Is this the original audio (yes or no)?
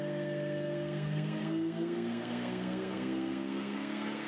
no